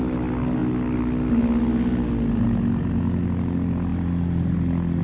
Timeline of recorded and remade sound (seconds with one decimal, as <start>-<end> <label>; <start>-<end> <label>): 0.0-5.0 recorded